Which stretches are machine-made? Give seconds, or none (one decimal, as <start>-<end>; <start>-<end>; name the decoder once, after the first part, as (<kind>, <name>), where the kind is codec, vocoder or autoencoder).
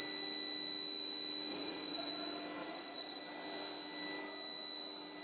1.5-2.1 (vocoder, Vocos); 2.6-3.2